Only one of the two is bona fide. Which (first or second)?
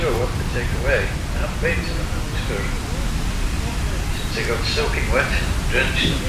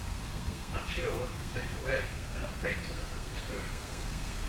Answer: first